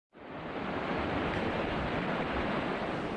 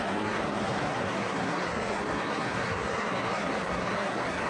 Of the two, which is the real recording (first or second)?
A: first